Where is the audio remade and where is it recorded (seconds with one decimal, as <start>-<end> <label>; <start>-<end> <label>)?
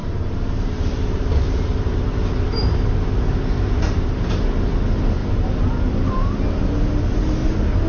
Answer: 0.0-4.7 remade; 4.7-5.2 recorded; 5.2-5.8 remade; 5.8-7.9 recorded